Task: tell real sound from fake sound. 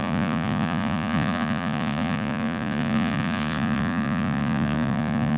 fake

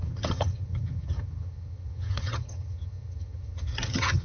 fake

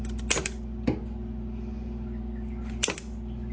real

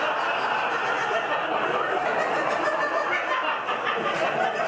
real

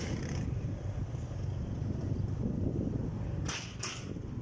real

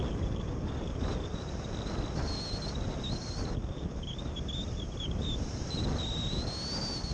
real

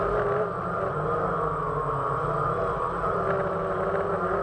real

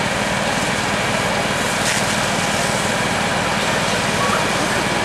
real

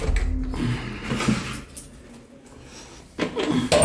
real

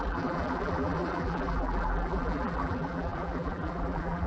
fake